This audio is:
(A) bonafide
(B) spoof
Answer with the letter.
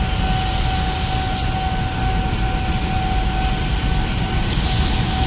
A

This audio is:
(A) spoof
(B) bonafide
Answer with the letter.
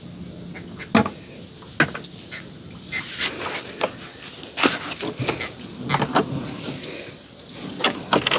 B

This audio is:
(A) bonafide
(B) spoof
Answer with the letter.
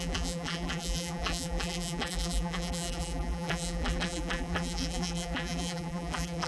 B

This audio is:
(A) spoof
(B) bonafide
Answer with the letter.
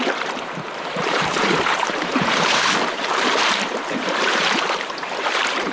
A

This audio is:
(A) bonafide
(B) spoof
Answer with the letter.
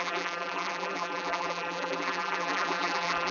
B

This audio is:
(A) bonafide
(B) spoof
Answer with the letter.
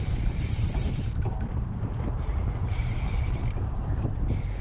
B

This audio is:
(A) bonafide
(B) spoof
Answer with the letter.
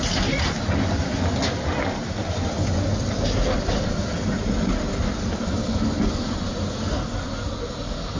A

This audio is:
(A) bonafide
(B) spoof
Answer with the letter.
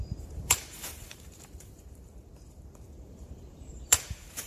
B